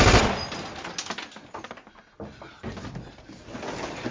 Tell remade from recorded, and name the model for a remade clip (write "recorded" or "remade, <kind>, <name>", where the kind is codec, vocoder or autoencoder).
recorded